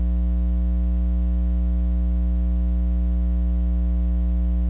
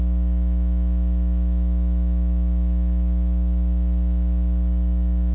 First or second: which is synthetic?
second